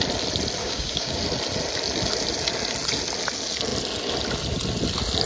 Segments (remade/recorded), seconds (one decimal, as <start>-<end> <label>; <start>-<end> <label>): 0.0-0.6 recorded; 0.6-1.2 remade; 1.2-5.3 recorded